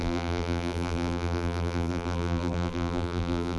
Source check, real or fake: fake